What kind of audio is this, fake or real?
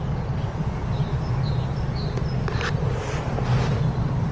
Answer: real